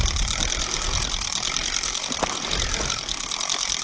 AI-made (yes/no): no